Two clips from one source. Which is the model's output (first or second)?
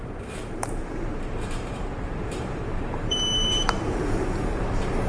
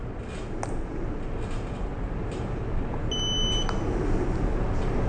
first